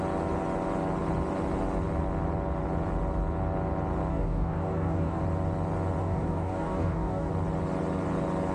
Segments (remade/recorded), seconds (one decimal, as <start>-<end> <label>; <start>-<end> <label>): 0.0-4.1 recorded; 4.1-5.2 remade; 5.2-6.0 recorded; 6.0-7.3 remade; 7.3-8.5 recorded